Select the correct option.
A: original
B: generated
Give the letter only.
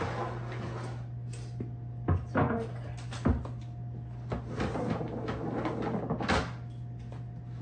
A